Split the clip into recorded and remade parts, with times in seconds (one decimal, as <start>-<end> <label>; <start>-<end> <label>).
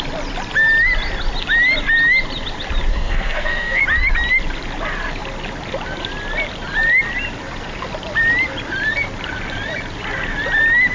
0.0-2.9 recorded; 2.9-3.8 remade; 3.8-10.9 recorded